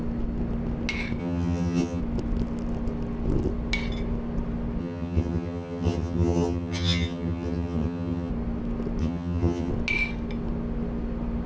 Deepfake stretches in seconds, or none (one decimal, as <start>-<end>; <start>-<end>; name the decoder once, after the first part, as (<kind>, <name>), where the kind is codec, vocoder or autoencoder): 1.2-2.0 (vocoder, HiFi-GAN); 4.8-8.3; 9.0-9.7